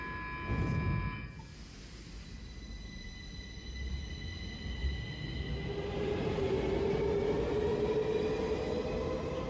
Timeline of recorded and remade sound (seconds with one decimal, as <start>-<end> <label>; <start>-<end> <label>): 0.0-9.5 recorded